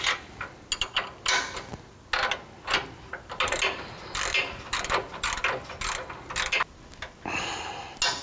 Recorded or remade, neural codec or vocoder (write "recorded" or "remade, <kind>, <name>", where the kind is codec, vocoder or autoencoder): recorded